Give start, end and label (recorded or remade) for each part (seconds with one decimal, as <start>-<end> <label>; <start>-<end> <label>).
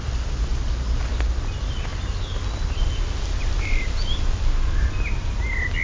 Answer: 0.0-5.8 recorded